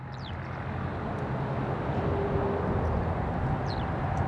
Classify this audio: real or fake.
real